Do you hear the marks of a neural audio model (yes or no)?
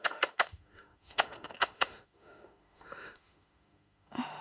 yes